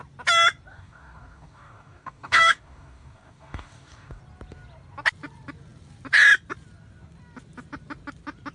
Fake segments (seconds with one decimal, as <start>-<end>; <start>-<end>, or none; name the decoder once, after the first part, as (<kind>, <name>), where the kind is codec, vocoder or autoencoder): 0.7-4.2 (codec, DAC)